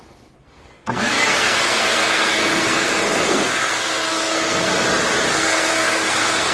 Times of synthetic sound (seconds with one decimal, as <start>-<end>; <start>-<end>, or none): 0.0-4.7; 5.3-6.5